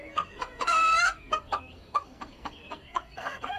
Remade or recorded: remade